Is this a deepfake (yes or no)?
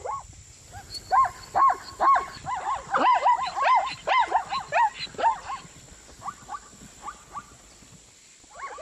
no